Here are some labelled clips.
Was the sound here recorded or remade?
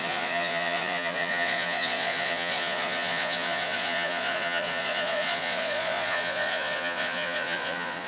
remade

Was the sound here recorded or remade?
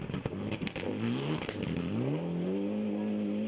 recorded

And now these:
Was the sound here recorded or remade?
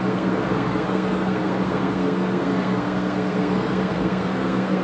remade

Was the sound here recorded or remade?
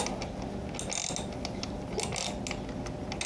recorded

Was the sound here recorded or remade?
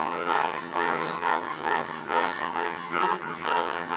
remade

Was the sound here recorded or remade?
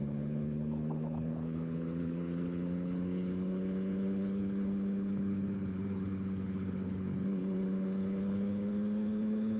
remade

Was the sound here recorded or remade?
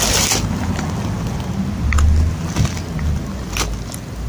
recorded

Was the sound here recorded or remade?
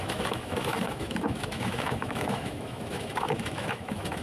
remade